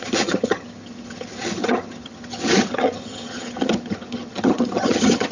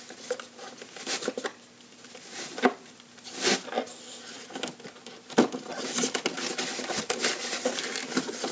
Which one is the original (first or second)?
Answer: second